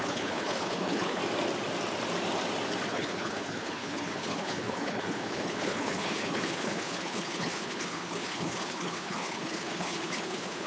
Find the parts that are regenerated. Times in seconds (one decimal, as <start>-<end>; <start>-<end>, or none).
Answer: 0.0-1.2; 2.9-10.7